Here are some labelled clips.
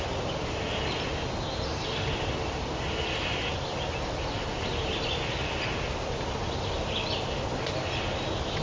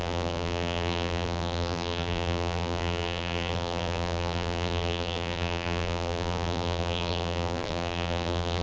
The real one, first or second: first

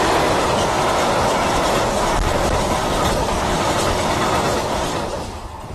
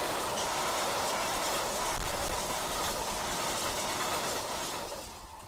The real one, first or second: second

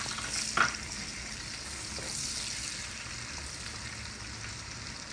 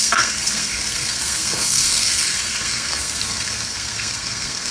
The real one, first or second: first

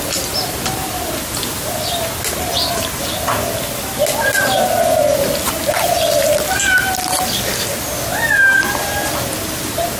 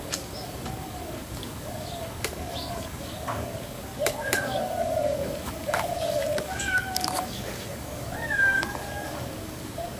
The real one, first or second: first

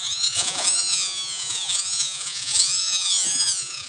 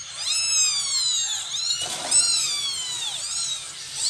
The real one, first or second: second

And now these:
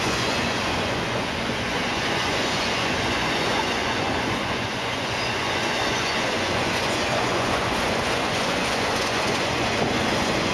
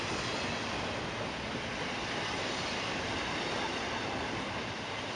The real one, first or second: second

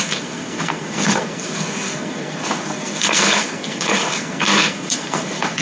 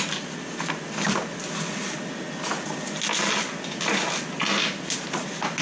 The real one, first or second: second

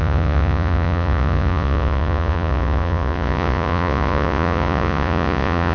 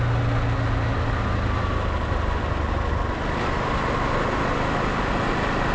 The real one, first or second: second